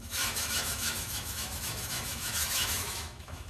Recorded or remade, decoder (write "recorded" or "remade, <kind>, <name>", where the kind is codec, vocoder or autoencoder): remade, autoencoder, DAC-VAE